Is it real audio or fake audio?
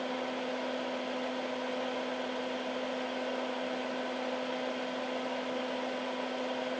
real